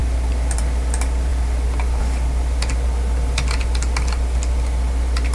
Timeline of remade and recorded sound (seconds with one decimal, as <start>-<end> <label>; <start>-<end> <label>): 0.0-0.6 remade; 0.6-1.3 recorded; 1.3-2.0 remade; 2.0-5.3 recorded

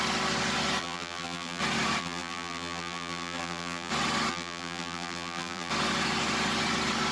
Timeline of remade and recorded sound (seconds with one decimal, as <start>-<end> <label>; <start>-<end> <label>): 0.0-0.8 recorded; 0.8-1.6 remade; 1.6-2.0 recorded; 2.0-3.9 remade; 3.9-4.3 recorded; 4.3-5.7 remade; 5.7-7.1 recorded

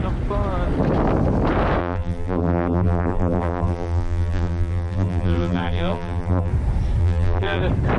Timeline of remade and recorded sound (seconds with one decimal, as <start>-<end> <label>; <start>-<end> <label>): 0.0-1.8 recorded; 1.8-6.5 remade; 6.5-7.0 recorded; 7.0-7.6 remade; 7.6-8.0 recorded